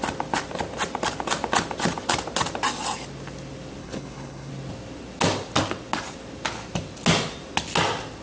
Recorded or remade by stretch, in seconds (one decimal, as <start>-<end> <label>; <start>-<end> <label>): 0.0-3.8 recorded; 3.8-4.5 remade; 4.5-8.2 recorded